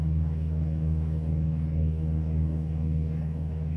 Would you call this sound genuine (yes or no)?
no